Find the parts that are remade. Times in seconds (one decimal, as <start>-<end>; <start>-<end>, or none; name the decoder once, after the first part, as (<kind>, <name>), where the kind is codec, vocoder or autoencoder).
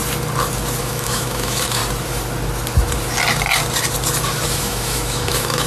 0.8-1.8 (autoencoder, DAC-VAE); 4.6-5.7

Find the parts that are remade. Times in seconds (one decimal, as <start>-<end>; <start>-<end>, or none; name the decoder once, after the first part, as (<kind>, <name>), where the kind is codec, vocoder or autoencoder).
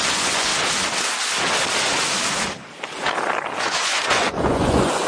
0.0-0.5 (vocoder, Vocos); 3.6-5.1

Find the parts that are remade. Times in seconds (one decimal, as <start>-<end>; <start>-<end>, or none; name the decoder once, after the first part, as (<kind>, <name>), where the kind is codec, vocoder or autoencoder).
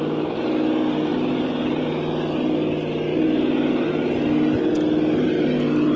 1.1-1.9 (vocoder, BigVGAN v2)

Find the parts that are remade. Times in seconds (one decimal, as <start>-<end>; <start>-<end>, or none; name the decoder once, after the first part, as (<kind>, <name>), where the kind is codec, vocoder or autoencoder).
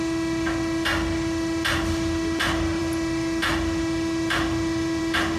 none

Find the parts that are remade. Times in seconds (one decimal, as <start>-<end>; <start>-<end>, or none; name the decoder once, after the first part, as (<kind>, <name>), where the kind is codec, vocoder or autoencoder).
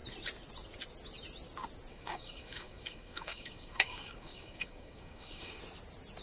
1.9-5.6 (codec, DAC)